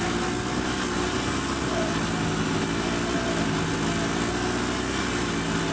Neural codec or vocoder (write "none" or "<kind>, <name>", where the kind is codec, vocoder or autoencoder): none